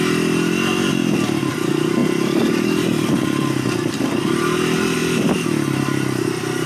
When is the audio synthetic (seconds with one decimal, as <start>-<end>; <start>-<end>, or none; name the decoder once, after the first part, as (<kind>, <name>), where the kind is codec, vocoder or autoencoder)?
1.0-1.5 (vocoder, BigVGAN v2)

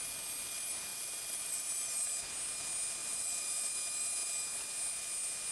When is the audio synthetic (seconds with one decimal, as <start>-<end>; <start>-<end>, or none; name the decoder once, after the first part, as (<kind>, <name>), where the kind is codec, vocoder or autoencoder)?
0.9-2.2 (vocoder, BigVGAN v2); 3.0-3.7

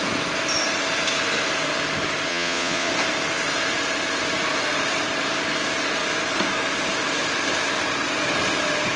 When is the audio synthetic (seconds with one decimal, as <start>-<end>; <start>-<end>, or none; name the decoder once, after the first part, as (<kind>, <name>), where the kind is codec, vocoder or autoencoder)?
2.3-2.9 (vocoder, Vocos)

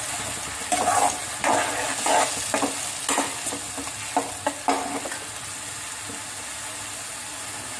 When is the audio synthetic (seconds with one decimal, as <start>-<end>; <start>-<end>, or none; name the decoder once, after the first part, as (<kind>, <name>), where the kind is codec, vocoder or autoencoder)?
none

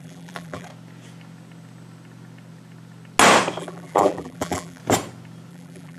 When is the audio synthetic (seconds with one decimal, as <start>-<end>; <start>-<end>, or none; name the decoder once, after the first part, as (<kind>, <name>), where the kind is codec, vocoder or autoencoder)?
0.0-0.7 (vocoder, BigVGAN v2); 3.6-4.8; 5.5-6.0

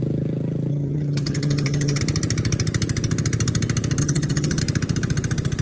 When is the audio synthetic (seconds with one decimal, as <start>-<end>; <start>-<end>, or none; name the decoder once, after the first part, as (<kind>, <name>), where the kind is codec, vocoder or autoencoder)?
0.7-2.0 (vocoder, HiFi-GAN); 4.0-4.6

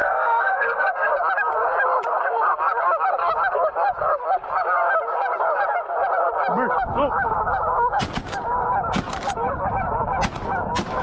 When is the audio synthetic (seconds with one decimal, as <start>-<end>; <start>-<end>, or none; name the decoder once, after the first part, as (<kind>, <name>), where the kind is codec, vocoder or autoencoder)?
0.0-1.1 (codec, SNAC)

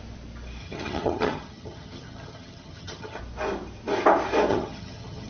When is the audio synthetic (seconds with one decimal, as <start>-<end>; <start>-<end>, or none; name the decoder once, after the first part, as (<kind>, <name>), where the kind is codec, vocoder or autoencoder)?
0.6-3.2 (vocoder, HiFi-GAN); 4.5-5.3